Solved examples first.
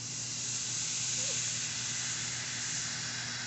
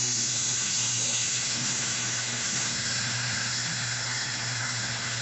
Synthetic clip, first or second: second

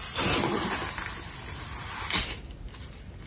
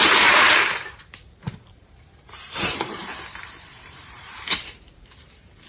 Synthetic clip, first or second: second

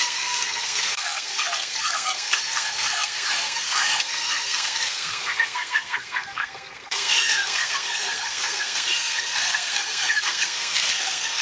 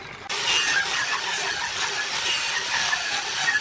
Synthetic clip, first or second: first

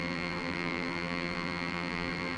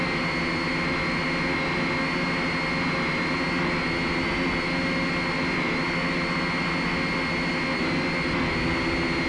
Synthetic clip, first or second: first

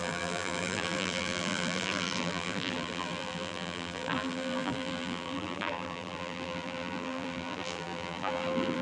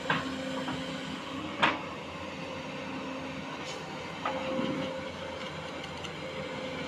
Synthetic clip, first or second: first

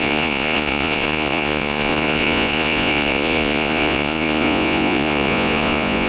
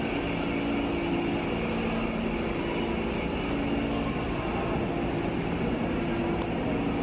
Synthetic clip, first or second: first